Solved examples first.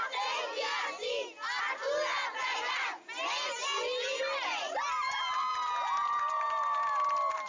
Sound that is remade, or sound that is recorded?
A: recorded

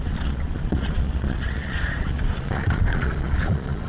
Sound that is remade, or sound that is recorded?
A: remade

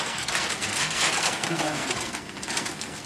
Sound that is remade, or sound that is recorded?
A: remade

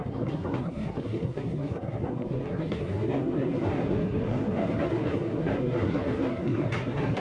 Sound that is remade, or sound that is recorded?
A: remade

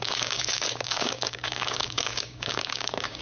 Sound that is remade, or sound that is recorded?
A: remade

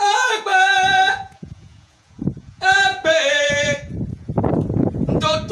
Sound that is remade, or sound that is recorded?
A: remade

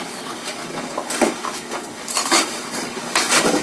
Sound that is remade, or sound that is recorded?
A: remade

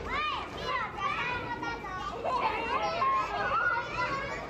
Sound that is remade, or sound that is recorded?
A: recorded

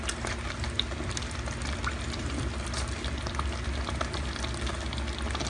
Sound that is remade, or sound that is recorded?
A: recorded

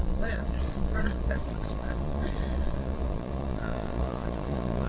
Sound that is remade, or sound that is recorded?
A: remade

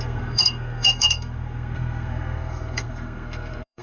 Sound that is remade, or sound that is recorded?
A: remade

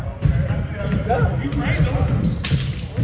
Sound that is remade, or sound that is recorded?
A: recorded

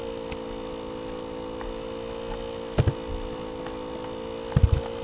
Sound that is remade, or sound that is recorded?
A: recorded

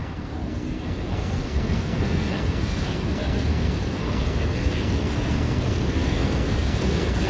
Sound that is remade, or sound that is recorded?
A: remade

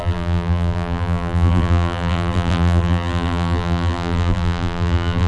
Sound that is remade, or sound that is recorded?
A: remade